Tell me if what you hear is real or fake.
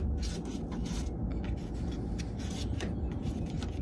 real